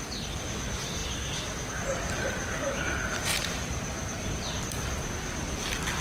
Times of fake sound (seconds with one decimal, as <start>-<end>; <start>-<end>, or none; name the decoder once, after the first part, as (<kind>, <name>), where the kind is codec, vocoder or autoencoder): 3.3-5.1 (vocoder, BigVGAN v2)